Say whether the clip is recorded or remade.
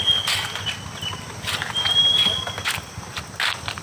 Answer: recorded